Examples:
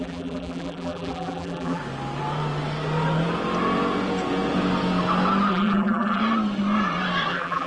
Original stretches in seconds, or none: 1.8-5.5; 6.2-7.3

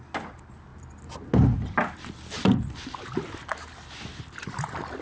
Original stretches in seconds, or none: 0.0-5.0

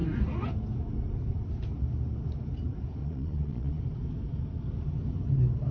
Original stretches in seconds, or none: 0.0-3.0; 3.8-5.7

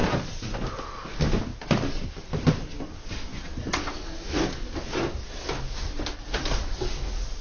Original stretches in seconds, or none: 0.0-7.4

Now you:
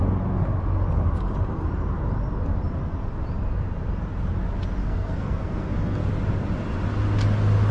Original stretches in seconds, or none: 0.0-4.8; 6.1-7.7

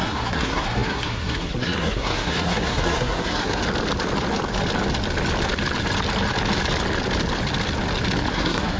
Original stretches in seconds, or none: 3.6-8.3

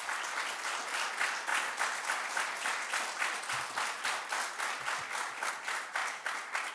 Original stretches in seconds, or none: 0.0-6.7